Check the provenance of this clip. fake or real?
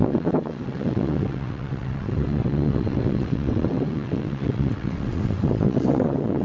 fake